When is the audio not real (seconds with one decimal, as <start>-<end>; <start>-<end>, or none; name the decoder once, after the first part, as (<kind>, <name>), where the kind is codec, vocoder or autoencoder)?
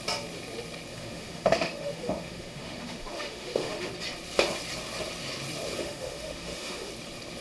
0.9-3.9 (autoencoder, DAC-VAE); 5.8-6.9